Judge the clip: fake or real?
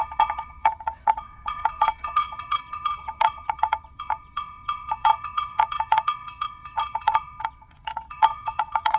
fake